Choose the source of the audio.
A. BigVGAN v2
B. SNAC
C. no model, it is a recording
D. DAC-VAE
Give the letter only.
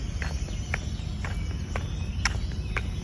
C